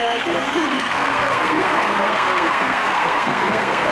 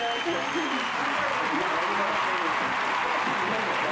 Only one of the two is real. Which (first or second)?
second